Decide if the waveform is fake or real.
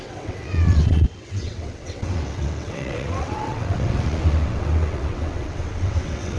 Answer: fake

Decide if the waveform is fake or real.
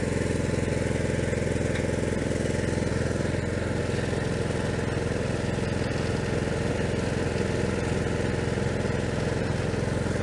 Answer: real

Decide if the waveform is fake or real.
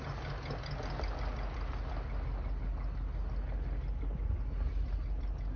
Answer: real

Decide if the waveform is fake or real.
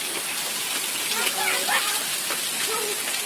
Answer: real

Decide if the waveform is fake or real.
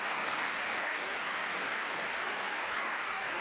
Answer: fake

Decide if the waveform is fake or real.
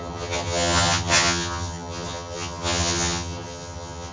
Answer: fake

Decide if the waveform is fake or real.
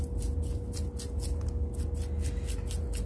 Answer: real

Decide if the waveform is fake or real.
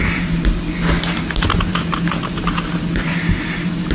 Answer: real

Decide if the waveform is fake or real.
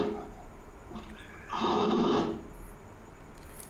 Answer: real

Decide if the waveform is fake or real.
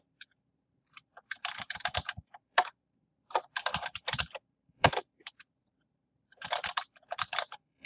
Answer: fake